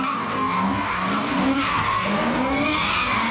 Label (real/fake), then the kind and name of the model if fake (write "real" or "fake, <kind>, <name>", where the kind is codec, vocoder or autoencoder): fake, codec, DAC